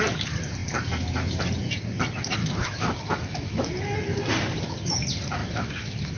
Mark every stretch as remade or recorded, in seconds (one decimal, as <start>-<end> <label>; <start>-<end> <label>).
0.0-2.4 recorded; 2.4-3.7 remade; 3.7-5.4 recorded; 5.4-6.2 remade